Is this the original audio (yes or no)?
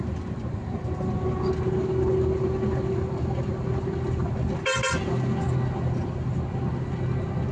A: yes